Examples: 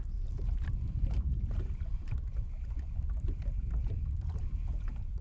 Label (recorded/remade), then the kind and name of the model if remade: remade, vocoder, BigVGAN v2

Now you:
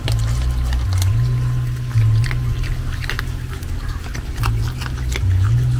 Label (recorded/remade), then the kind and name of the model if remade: recorded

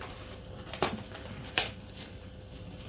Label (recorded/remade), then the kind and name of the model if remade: remade, vocoder, BigVGAN v2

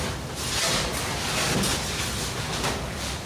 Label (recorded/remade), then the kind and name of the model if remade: recorded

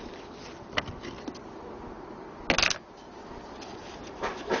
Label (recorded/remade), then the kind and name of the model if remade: recorded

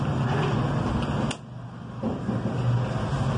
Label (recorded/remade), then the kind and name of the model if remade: recorded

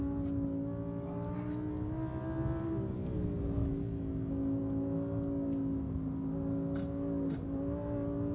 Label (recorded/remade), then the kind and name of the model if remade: recorded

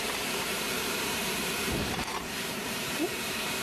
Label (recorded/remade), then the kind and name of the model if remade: remade, vocoder, BigVGAN v2